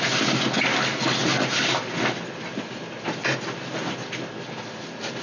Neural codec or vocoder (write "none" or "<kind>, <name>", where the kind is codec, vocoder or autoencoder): none